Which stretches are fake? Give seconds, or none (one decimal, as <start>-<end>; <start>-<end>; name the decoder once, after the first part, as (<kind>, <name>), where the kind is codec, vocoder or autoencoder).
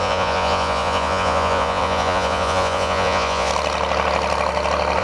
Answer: 0.0-3.5 (vocoder, Vocos)